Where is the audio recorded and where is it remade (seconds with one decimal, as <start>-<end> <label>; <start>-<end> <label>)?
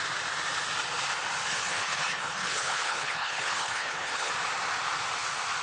0.0-1.5 recorded; 1.5-4.3 remade; 4.3-5.6 recorded